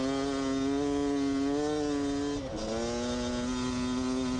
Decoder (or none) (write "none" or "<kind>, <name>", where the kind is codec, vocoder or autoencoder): none